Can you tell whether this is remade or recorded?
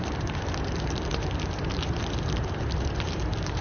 remade